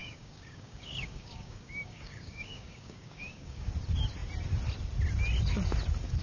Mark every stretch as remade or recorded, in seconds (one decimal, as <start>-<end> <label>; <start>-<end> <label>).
0.0-3.7 remade; 3.7-6.2 recorded